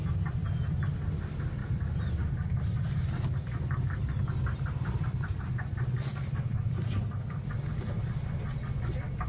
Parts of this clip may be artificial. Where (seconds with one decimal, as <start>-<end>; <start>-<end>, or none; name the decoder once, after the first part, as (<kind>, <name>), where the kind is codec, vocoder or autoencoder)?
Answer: 1.6-5.4 (vocoder, BigVGAN v2); 6.5-7.1